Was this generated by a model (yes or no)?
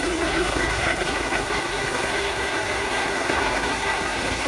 yes